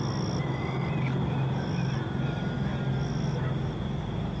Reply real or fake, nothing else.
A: real